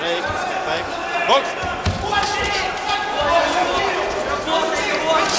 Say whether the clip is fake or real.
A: real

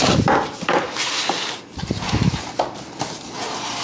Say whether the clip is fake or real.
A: fake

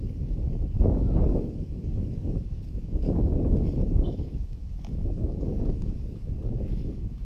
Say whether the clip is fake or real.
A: fake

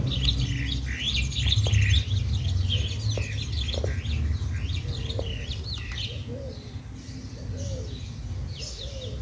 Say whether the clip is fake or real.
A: real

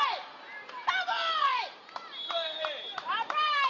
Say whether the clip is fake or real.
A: fake